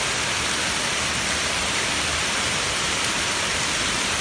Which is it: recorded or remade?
recorded